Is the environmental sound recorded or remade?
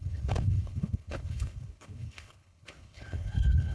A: remade